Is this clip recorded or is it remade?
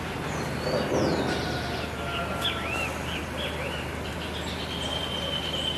recorded